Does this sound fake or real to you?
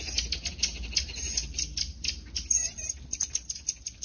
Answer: real